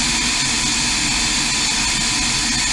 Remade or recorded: recorded